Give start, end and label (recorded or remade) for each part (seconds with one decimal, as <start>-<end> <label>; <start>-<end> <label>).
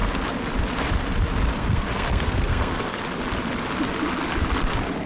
0.0-1.6 recorded; 1.6-3.0 remade; 3.0-5.1 recorded